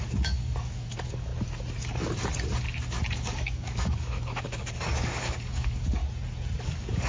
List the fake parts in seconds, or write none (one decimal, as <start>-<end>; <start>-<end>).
0.0-1.3; 3.1-6.0; 6.6-7.1